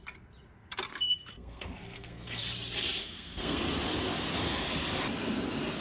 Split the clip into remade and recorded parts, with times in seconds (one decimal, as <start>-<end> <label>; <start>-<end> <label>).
0.0-0.9 recorded; 0.9-2.4 remade; 2.4-3.0 recorded; 3.0-3.6 remade; 3.6-5.8 recorded

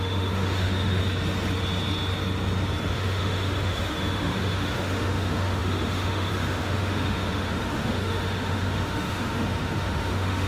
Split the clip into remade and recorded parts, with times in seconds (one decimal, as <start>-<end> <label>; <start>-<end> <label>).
0.0-1.0 remade; 1.0-2.9 recorded; 2.9-10.5 remade

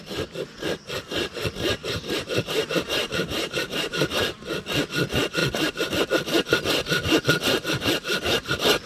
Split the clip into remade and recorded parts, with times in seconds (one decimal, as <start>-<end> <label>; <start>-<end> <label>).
0.0-1.8 recorded; 1.8-4.5 remade; 4.5-8.9 recorded

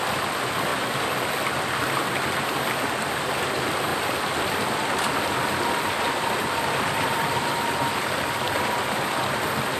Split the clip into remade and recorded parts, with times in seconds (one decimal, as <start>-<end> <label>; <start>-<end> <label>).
0.0-9.8 recorded

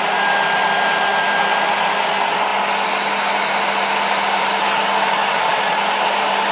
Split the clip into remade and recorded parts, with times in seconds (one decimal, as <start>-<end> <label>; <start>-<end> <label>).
0.0-6.5 recorded

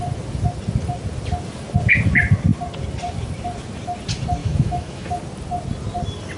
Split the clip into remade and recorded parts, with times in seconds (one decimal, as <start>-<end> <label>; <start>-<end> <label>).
0.0-4.4 recorded; 4.4-5.1 remade; 5.1-6.4 recorded